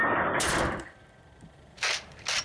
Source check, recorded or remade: remade